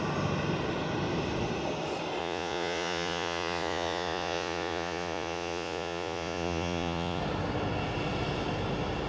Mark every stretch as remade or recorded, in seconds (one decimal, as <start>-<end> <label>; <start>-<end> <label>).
0.0-2.2 recorded; 2.2-7.2 remade; 7.2-9.1 recorded